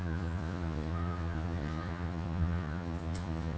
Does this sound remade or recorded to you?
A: remade